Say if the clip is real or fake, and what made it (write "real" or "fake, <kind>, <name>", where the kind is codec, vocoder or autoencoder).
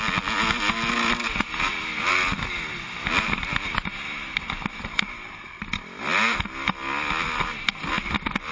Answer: real